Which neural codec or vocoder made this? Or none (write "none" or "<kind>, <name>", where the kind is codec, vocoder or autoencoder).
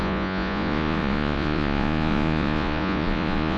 vocoder, Vocos